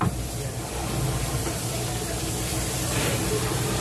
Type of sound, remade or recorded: remade